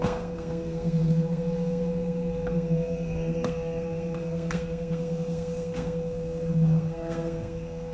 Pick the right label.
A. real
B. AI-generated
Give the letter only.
B